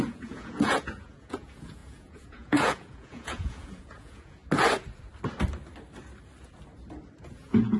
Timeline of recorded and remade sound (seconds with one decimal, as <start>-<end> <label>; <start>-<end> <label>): 0.0-4.4 remade; 4.4-7.3 recorded; 7.3-7.8 remade